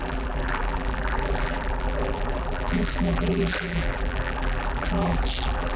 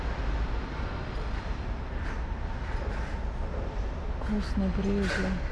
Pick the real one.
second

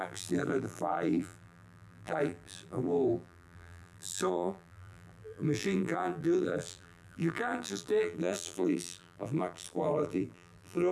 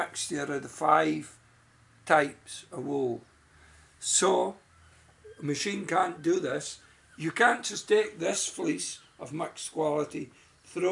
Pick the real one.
second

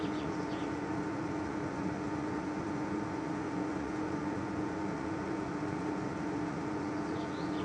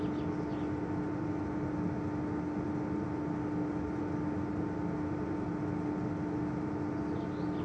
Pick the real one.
second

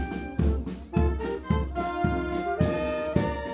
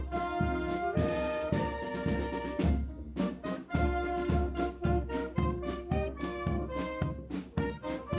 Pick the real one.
first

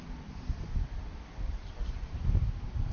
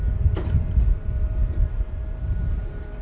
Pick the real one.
first